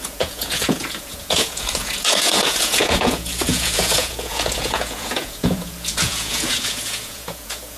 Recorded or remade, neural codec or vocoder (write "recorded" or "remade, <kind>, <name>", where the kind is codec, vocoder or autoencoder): remade, vocoder, Vocos